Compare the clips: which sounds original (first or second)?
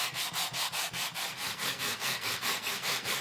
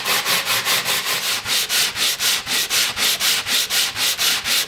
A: second